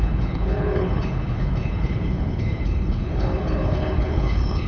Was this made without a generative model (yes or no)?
no